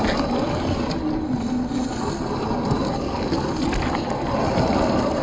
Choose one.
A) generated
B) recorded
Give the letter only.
B